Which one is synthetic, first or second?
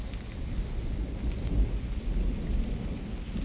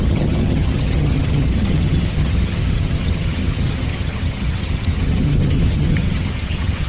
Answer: second